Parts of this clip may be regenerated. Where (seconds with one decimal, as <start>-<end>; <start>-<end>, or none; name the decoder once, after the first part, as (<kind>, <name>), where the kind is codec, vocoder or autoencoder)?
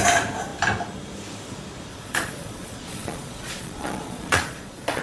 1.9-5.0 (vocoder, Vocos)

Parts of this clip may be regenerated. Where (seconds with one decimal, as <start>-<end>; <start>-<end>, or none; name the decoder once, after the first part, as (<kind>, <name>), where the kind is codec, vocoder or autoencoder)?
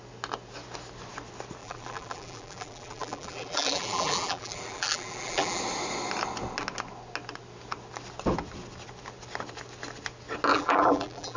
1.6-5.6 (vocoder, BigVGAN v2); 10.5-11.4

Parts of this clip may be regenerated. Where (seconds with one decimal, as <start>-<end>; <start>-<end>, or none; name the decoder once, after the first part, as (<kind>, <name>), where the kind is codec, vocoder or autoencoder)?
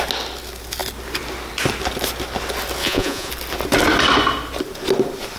2.8-3.3 (vocoder, Vocos)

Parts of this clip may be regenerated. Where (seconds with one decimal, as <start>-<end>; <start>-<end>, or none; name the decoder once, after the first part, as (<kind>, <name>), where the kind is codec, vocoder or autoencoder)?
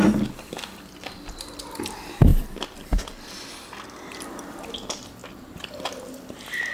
2.3-4.2 (vocoder, BigVGAN v2); 5.2-5.7